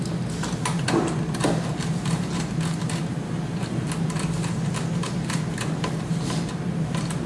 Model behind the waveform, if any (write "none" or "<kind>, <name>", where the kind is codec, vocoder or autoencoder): none